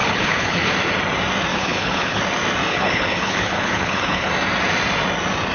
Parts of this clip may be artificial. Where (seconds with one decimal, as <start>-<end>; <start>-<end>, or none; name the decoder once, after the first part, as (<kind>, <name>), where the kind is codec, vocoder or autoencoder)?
0.0-0.7 (codec, HILCodec); 1.5-2.2; 2.7-4.3